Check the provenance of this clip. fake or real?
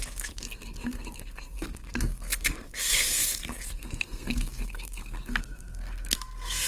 fake